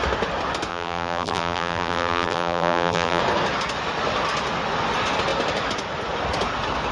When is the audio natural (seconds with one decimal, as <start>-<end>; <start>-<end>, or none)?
0.0-0.7; 3.2-6.9